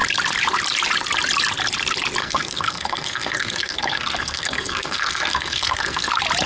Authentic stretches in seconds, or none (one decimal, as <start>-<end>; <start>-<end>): 0.0-2.2; 6.1-6.5